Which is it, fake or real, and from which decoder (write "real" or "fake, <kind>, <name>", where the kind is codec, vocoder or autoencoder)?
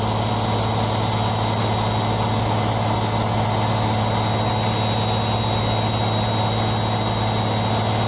real